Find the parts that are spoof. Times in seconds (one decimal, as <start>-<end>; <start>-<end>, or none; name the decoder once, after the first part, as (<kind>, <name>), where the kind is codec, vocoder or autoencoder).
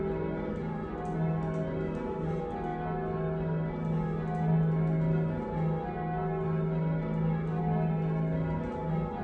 none